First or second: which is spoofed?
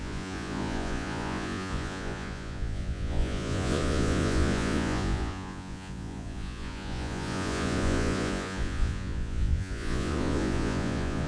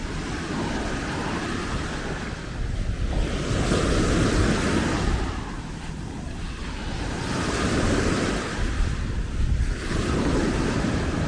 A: first